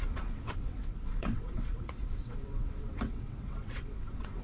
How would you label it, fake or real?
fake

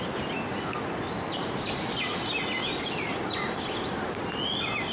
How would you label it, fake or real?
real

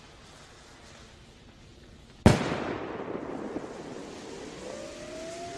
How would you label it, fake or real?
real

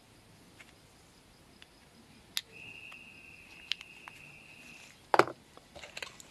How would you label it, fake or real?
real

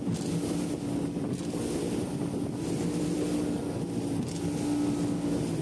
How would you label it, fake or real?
real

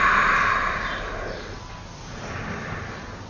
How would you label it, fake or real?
real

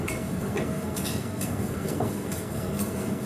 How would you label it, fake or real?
fake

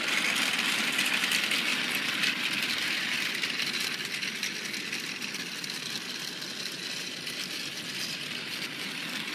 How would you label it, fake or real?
real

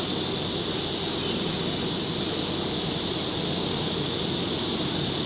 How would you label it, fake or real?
real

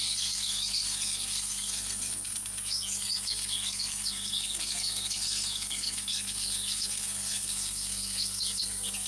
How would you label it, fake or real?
fake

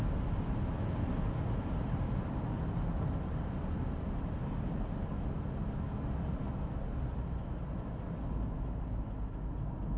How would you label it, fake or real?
real